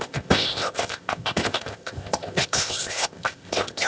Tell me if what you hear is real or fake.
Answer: fake